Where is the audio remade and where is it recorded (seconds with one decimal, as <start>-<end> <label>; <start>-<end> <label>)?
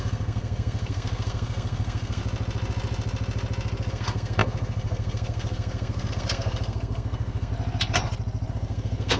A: 0.0-2.2 remade; 2.2-3.9 recorded; 3.9-7.5 remade; 7.5-8.5 recorded; 8.5-9.2 remade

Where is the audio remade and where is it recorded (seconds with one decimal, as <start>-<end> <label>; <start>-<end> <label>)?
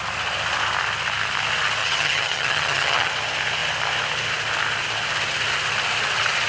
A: 0.0-1.8 recorded; 1.8-3.1 remade; 3.1-6.5 recorded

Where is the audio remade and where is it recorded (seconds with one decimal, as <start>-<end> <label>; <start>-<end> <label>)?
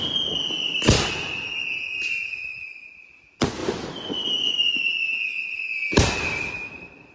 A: 0.0-7.1 recorded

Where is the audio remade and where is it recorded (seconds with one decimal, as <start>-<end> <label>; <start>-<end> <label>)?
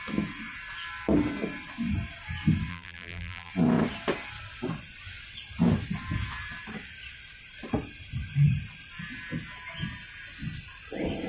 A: 0.0-2.7 recorded; 2.7-3.5 remade; 3.5-11.3 recorded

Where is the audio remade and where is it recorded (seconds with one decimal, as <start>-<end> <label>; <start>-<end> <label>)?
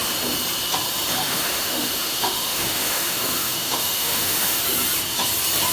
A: 0.0-1.2 recorded; 1.2-4.6 remade; 4.6-5.7 recorded